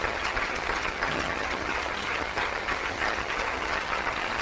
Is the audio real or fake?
fake